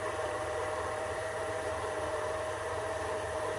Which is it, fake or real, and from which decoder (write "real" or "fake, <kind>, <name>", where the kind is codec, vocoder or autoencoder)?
fake, vocoder, BigVGAN v2